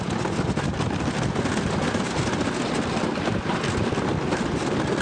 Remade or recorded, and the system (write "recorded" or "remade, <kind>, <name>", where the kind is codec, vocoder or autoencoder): recorded